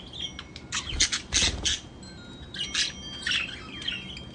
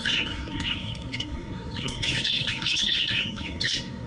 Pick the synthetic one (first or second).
second